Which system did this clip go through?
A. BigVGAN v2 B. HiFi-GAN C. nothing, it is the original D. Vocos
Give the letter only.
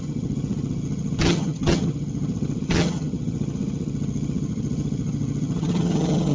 B